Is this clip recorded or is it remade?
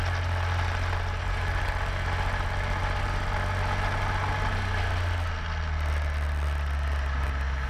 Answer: recorded